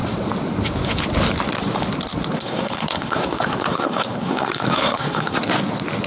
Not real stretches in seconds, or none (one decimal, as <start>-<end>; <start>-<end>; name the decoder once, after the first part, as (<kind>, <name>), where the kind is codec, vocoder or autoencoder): 2.4-5.4 (codec, SNAC)